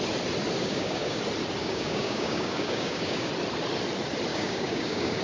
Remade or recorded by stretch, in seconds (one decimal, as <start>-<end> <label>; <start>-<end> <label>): 0.0-0.6 recorded; 0.6-1.2 remade; 1.2-1.6 recorded; 1.6-3.3 remade; 3.3-4.3 recorded; 4.3-5.2 remade